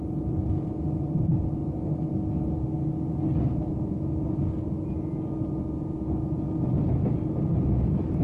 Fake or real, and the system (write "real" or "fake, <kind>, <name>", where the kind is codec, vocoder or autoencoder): real